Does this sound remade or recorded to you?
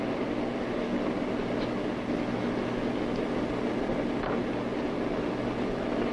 recorded